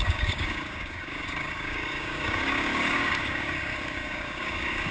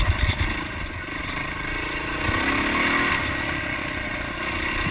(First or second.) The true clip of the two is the second